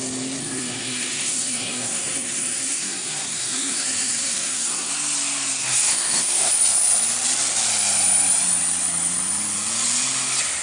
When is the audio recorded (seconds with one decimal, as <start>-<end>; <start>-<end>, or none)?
0.0-0.4; 4.9-5.6; 6.5-10.6